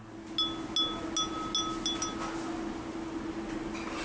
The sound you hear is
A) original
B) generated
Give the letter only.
A